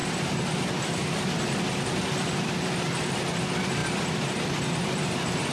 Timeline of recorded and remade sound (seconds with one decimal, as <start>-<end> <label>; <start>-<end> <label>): 0.0-2.8 remade; 2.8-3.8 recorded; 3.8-5.0 remade; 5.0-5.5 recorded